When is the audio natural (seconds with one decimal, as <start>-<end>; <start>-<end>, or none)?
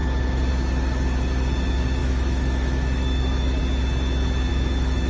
0.0-2.0; 3.6-4.5